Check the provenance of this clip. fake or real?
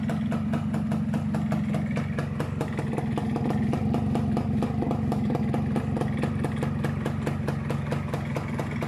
real